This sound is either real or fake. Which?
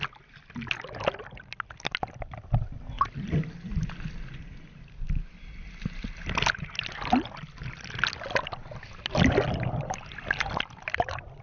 real